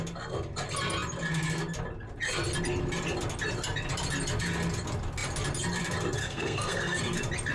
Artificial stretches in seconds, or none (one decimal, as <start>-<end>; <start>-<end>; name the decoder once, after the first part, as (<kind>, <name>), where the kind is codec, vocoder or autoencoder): 6.2-7.0 (codec, SNAC)